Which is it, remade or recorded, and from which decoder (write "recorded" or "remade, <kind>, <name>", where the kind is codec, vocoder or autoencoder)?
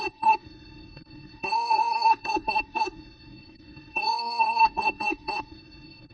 remade, codec, SNAC